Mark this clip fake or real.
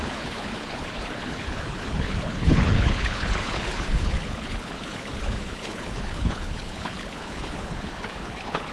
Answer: fake